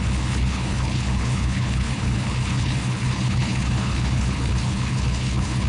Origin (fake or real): fake